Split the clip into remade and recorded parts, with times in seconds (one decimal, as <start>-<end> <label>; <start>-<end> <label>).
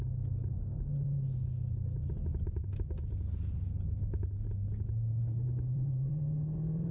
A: 0.0-1.4 remade; 1.4-5.2 recorded; 5.2-6.9 remade